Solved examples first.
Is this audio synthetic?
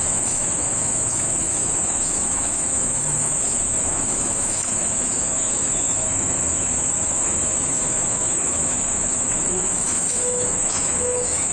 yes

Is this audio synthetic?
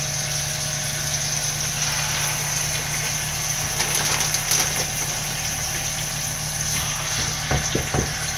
no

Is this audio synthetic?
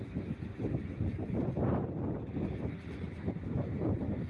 no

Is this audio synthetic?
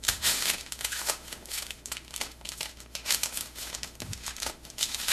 yes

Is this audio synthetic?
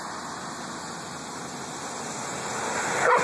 no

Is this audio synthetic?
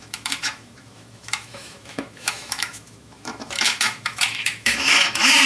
yes